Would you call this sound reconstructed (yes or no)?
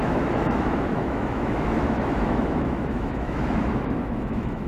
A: yes